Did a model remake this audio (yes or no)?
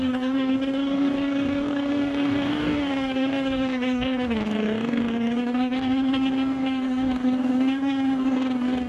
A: yes